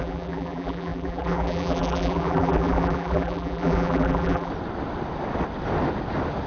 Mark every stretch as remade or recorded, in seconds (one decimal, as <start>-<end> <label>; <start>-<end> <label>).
0.0-4.5 remade; 4.5-6.5 recorded